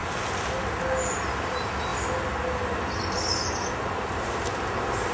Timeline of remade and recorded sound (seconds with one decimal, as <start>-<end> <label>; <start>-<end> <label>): 0.0-1.4 recorded; 1.4-1.9 remade; 1.9-3.7 recorded; 3.7-5.1 remade